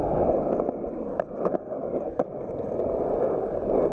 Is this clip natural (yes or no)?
yes